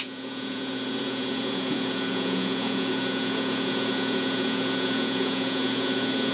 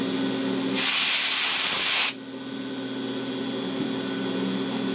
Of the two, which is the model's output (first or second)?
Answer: first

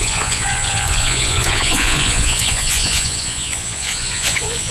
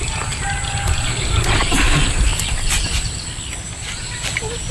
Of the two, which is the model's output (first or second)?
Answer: first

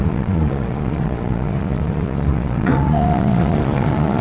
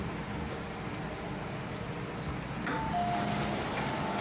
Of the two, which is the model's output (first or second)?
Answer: first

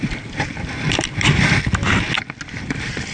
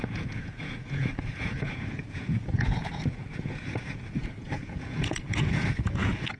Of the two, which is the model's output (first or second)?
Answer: second